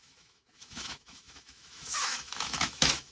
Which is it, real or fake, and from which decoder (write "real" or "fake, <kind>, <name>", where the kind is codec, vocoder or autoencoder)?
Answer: fake, autoencoder, DAC-VAE